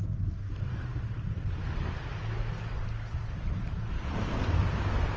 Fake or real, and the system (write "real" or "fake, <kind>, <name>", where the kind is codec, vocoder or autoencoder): real